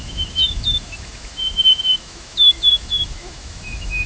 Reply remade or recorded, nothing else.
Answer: remade